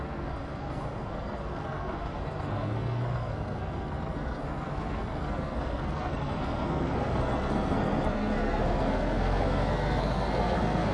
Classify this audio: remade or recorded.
remade